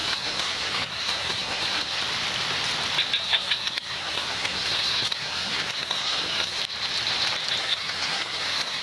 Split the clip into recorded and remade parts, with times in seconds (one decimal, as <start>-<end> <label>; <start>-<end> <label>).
0.0-2.0 remade; 2.0-3.2 recorded; 3.2-6.6 remade; 6.6-7.6 recorded; 7.6-8.8 remade